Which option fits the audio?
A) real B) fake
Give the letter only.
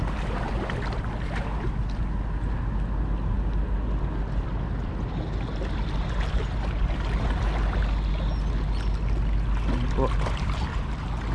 A